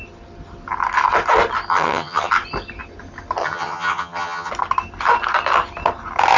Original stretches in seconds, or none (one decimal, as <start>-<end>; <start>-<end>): 0.0-1.7; 2.3-3.4; 4.5-6.4